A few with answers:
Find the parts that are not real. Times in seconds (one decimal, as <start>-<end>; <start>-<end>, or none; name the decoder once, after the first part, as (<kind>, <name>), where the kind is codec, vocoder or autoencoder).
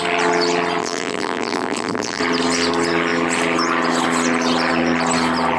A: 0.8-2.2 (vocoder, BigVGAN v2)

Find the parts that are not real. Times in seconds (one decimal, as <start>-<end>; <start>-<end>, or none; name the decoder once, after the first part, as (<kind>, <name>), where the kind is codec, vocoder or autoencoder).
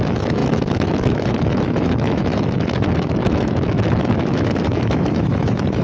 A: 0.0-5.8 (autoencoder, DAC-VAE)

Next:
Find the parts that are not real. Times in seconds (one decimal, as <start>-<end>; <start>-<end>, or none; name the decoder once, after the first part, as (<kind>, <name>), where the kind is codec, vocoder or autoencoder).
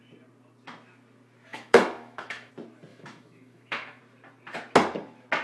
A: 1.5-2.5 (autoencoder, DAC-VAE); 2.9-4.0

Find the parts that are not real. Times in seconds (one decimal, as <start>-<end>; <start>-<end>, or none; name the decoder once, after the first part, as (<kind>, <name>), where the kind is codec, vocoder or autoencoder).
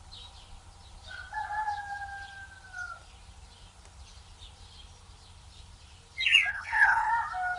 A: 6.5-7.1 (codec, HILCodec)